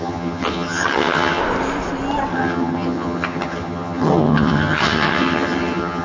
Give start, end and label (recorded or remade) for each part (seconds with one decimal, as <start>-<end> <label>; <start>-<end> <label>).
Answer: 0.0-1.4 remade; 1.4-2.3 recorded; 2.3-6.0 remade